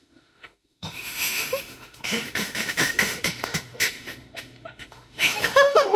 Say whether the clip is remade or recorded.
remade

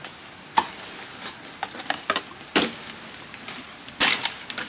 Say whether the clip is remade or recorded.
recorded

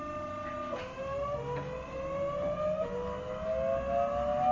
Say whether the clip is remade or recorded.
recorded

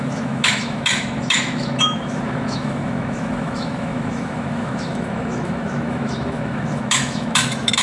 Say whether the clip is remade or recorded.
remade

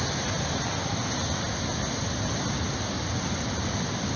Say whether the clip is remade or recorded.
recorded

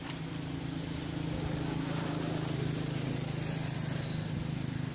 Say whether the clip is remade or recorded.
recorded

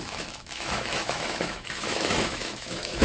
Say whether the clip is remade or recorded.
remade